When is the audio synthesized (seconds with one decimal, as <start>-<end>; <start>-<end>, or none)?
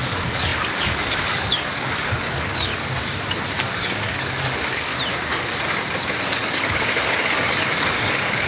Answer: 0.0-2.7; 3.7-4.9; 6.2-8.5